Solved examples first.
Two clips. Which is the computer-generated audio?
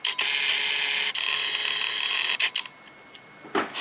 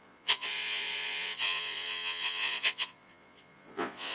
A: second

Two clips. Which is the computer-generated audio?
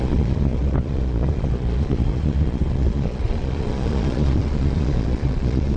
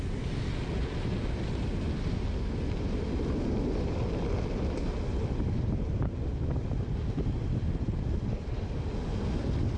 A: first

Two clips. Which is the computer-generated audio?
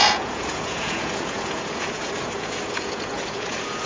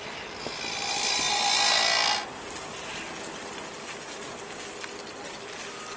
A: first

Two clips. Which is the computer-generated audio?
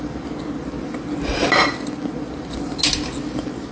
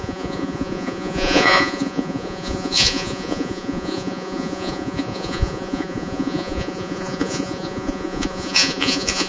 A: second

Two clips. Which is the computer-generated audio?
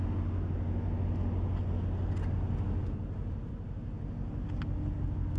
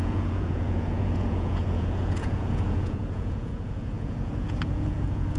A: second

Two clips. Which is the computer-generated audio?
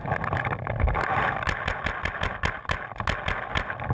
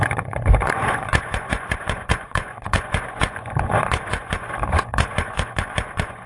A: second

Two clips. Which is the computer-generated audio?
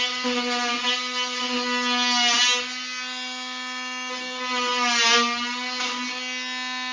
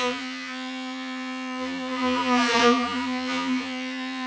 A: second